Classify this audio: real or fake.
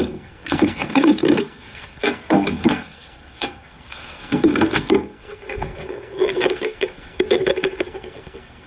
fake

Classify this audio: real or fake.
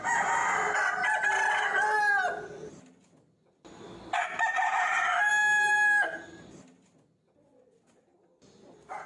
real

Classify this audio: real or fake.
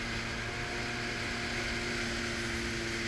real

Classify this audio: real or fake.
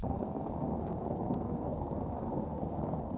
fake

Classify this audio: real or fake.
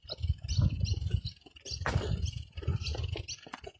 real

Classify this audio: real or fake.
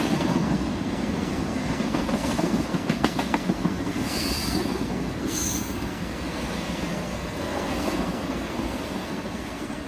fake